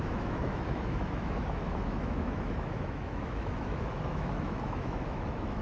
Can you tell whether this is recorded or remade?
remade